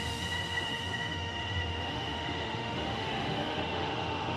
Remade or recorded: remade